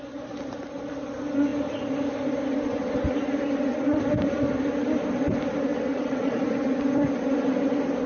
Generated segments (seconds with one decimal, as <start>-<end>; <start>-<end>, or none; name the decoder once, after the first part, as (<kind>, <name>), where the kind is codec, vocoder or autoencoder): 5.9-6.4 (vocoder, Vocos)